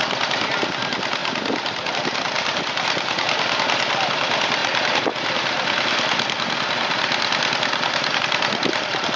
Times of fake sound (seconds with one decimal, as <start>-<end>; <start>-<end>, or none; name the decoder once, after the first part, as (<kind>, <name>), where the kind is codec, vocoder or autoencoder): 0.0-1.2 (vocoder, BigVGAN v2); 1.9-9.2